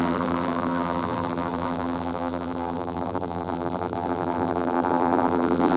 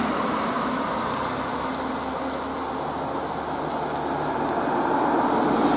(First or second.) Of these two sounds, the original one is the second